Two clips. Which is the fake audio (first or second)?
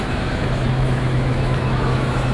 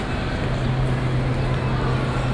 first